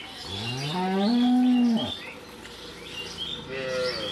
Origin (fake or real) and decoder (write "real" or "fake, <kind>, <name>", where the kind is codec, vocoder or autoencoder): real